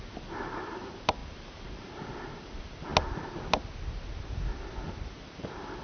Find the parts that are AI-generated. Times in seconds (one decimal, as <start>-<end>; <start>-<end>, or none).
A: 0.0-2.9; 5.2-5.8